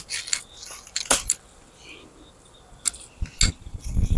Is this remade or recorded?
recorded